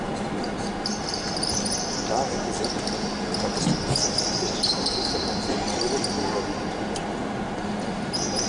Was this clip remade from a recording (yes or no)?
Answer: no